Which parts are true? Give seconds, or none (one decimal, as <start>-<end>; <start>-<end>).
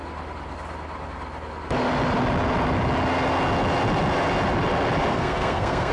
0.0-5.1